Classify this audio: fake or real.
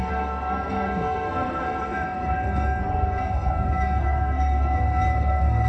fake